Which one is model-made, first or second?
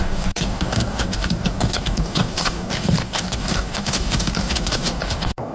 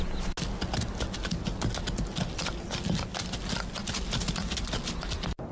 first